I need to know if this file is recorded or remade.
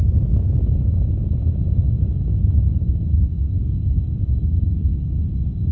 remade